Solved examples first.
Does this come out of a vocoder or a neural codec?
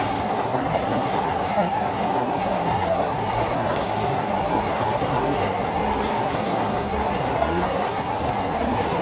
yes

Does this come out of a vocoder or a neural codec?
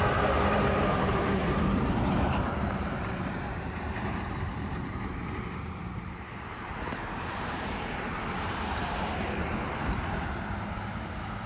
yes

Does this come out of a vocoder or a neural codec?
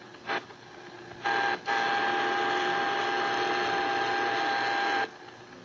no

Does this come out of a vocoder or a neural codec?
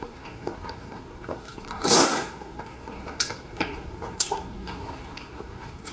yes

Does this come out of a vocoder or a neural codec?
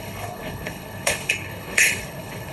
yes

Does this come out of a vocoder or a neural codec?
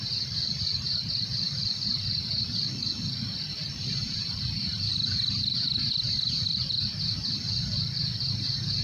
yes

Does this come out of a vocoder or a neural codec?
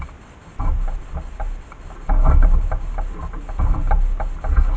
no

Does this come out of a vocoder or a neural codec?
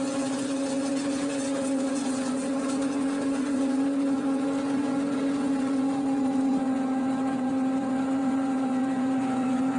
yes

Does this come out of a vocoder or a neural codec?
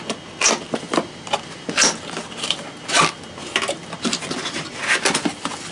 no